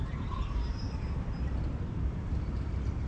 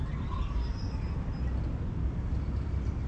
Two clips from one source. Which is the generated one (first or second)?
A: first